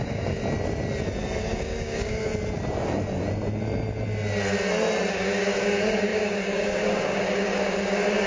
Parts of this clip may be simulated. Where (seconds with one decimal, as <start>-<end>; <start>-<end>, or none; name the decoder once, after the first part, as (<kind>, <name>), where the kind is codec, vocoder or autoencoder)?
0.0-0.4 (codec, DAC); 1.4-2.3; 5.1-8.3